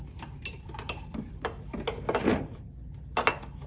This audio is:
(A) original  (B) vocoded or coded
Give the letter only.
A